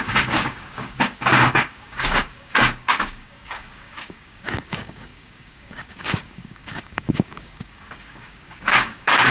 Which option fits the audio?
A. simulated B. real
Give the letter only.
A